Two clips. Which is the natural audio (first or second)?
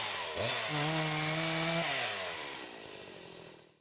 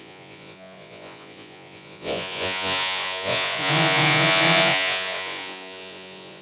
first